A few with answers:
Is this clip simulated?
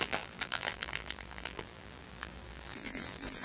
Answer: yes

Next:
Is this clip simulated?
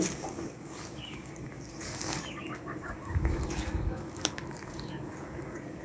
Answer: yes